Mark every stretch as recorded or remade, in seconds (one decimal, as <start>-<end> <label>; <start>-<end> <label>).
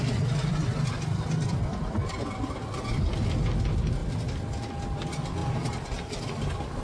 0.0-6.8 recorded